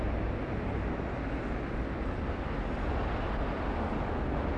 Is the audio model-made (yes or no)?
no